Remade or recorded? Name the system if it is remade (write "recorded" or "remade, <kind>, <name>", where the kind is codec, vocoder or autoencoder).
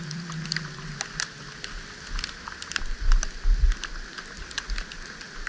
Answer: recorded